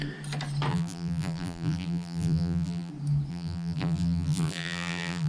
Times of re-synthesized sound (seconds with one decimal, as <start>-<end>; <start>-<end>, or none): 0.7-2.9; 3.3-5.3